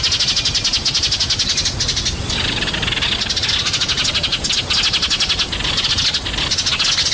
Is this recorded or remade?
recorded